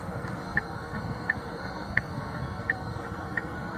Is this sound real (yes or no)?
no